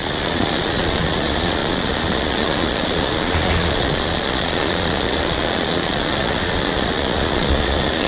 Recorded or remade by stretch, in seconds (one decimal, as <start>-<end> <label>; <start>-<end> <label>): 0.0-8.1 remade